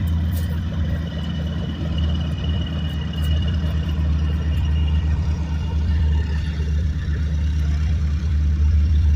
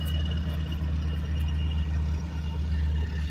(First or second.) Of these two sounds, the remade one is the first